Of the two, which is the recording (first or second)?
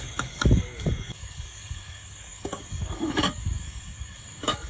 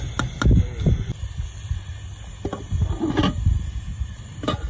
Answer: second